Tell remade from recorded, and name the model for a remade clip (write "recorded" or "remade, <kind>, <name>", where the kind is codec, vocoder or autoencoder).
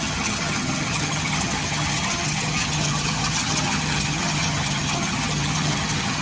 remade, vocoder, HiFi-GAN